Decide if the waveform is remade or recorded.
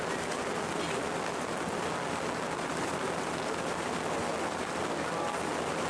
recorded